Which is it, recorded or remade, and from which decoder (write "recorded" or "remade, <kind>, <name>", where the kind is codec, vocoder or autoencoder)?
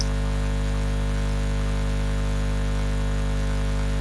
recorded